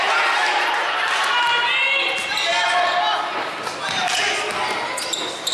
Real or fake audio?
real